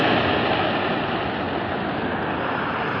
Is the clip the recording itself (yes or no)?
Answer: yes